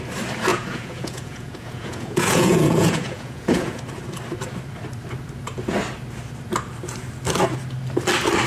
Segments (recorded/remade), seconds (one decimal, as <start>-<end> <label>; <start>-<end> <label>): 0.0-0.5 recorded; 0.5-3.8 remade; 3.8-8.5 recorded